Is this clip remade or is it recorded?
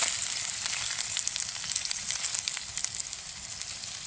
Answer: recorded